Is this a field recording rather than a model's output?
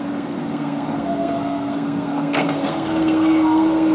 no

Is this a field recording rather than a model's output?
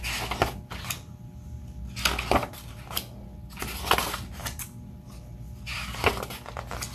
yes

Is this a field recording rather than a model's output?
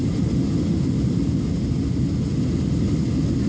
yes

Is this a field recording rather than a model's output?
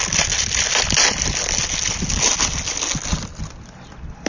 yes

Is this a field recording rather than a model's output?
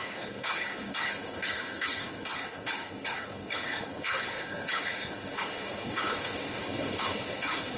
no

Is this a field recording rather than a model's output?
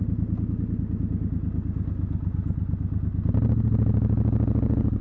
yes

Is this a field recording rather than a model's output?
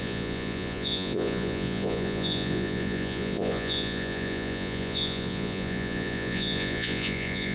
no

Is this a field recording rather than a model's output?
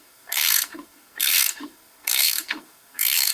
no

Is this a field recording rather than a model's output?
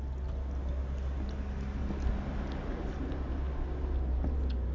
yes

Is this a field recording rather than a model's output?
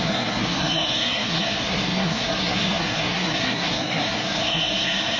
no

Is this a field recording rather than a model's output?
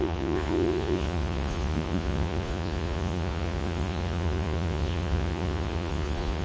no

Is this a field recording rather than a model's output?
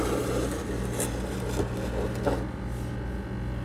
yes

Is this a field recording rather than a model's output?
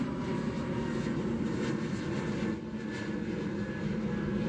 yes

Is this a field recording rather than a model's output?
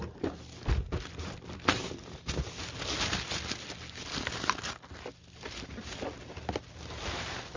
yes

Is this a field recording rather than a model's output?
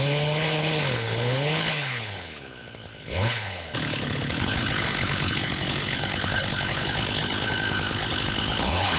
no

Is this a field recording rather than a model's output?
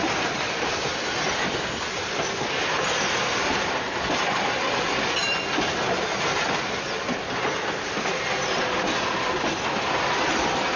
yes